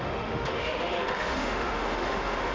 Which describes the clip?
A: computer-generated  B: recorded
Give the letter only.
A